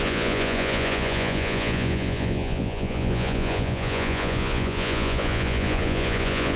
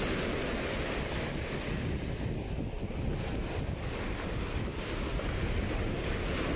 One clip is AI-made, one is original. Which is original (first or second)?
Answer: second